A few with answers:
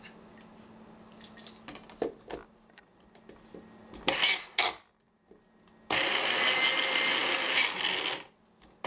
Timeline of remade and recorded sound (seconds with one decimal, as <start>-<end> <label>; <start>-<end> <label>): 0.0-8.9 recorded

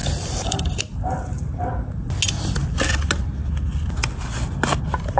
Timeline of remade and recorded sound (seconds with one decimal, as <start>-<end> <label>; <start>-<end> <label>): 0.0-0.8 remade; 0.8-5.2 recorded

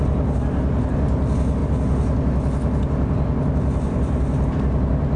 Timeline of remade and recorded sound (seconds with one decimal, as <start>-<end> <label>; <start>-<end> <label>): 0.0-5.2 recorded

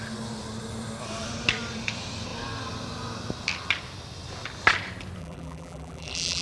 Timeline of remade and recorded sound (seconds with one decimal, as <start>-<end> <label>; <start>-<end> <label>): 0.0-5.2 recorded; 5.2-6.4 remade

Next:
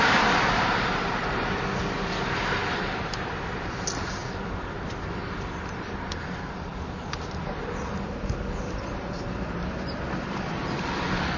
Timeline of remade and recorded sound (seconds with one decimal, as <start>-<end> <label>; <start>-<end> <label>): 0.0-11.4 remade

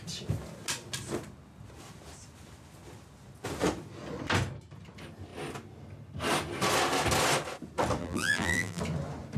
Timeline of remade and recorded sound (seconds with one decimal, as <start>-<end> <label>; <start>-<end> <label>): 0.0-8.0 recorded; 8.0-8.8 remade; 8.8-9.4 recorded

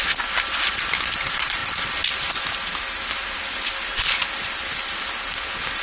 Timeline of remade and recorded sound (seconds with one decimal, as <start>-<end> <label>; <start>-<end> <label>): 0.0-3.9 recorded; 3.9-5.1 remade; 5.1-5.8 recorded

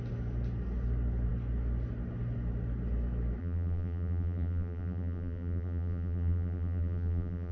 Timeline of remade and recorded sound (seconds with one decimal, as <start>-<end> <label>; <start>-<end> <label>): 0.0-3.4 recorded; 3.4-7.5 remade